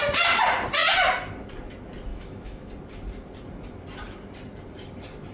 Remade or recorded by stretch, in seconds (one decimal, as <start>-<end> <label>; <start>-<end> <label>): 0.0-2.1 recorded; 2.1-2.7 remade; 2.7-5.3 recorded